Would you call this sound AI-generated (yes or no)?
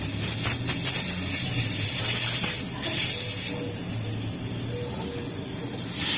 no